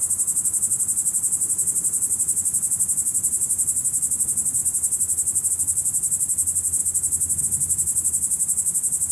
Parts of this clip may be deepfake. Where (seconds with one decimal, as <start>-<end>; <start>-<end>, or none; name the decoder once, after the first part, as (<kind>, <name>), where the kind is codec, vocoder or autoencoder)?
none